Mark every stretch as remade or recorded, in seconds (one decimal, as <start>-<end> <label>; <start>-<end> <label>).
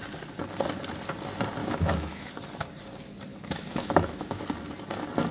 0.0-1.6 recorded; 1.6-2.3 remade; 2.3-3.3 recorded; 3.3-4.4 remade; 4.4-5.3 recorded